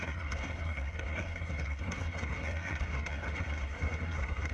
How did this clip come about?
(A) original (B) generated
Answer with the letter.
B